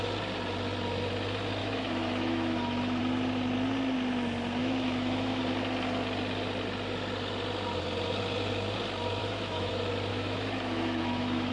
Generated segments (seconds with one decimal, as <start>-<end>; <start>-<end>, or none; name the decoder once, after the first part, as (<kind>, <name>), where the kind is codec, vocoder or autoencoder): 1.6-3.0 (autoencoder, DAC-VAE); 4.6-5.4; 9.2-9.7; 10.1-11.5